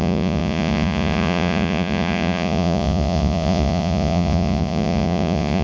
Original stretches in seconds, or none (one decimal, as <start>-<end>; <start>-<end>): none